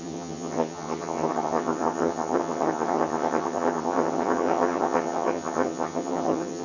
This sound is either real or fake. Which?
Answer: fake